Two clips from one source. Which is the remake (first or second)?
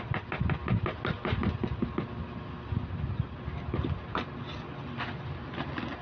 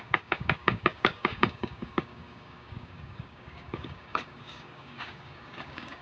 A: second